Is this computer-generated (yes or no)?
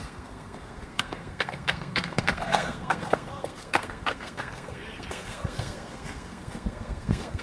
yes